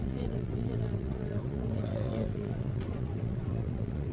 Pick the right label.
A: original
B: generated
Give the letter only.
B